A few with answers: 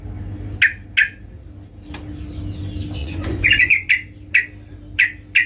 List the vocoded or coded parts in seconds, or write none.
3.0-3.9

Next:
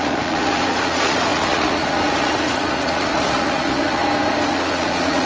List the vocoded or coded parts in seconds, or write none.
0.0-4.0; 4.5-5.3

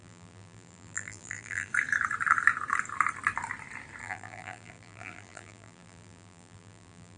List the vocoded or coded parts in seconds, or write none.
0.0-1.7; 4.0-7.2

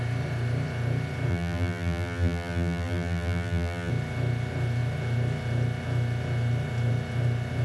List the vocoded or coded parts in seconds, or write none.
1.3-3.9

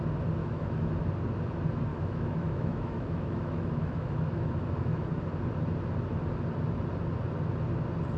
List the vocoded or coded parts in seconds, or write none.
0.4-0.9; 1.9-5.1

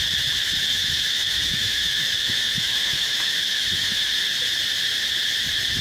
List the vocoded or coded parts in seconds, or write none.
0.7-4.2

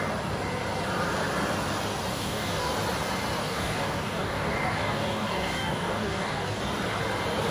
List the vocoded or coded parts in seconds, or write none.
2.1-2.7; 3.4-6.6